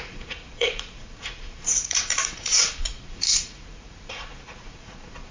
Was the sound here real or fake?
fake